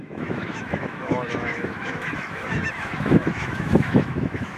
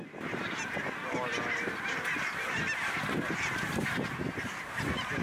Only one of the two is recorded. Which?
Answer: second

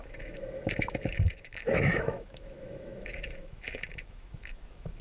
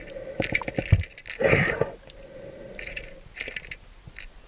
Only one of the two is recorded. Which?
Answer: second